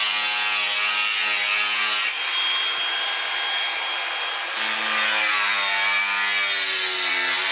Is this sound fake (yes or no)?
no